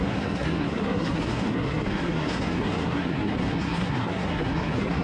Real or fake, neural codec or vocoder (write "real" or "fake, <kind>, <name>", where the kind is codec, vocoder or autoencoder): fake, codec, SNAC